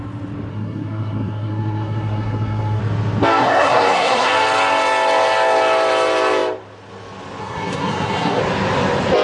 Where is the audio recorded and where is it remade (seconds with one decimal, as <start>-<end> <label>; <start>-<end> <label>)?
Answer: 0.0-0.5 recorded; 0.5-2.8 remade; 2.8-3.4 recorded; 3.4-4.3 remade; 4.3-7.4 recorded; 7.4-8.4 remade; 8.4-9.2 recorded